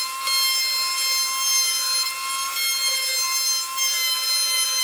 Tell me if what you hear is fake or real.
real